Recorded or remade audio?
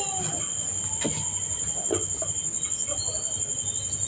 recorded